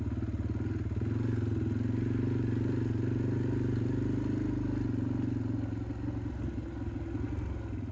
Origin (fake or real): real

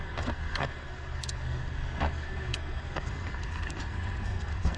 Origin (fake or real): fake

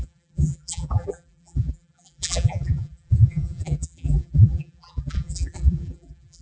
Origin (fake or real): fake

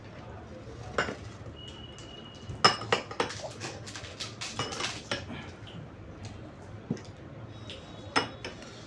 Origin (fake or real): real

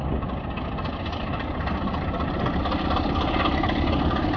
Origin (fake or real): real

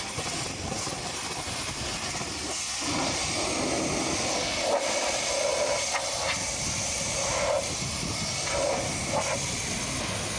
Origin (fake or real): real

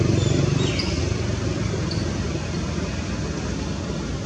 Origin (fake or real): real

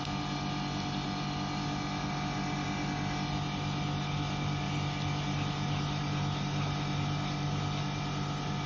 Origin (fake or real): real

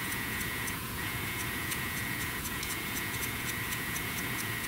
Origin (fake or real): fake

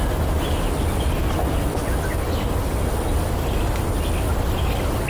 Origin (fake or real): real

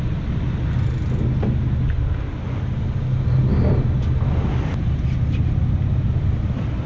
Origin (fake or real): real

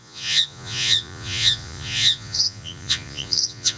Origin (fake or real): fake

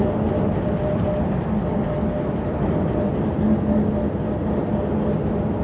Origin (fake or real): real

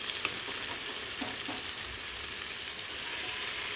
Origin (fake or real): real